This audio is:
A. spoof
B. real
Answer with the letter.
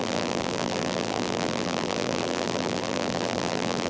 A